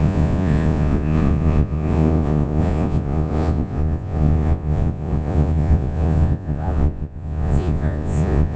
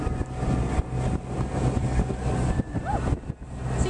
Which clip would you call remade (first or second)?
first